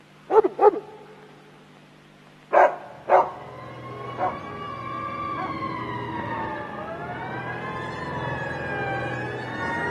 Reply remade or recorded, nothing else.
recorded